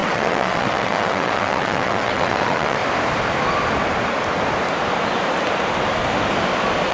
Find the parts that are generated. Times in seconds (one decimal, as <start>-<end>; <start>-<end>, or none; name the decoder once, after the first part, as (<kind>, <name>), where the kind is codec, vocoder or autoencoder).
0.0-2.8 (vocoder, WaveNeXt)